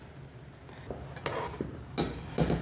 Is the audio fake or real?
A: real